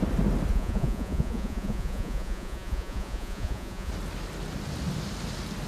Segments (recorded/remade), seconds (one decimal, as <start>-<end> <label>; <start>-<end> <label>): 0.0-0.5 recorded; 0.5-3.9 remade; 3.9-5.7 recorded